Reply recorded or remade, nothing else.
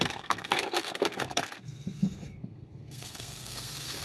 remade